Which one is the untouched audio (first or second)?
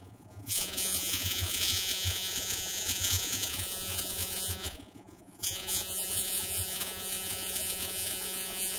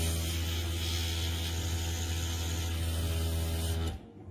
second